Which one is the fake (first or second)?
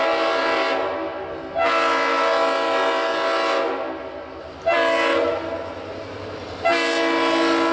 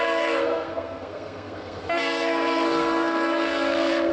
second